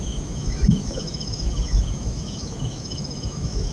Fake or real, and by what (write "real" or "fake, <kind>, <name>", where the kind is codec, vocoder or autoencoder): fake, autoencoder, DAC-VAE